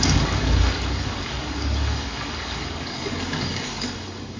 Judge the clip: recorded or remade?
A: remade